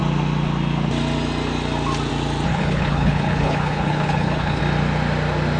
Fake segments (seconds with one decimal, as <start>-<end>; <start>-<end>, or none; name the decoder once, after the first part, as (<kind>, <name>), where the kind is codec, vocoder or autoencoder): 2.5-4.6 (codec, HILCodec)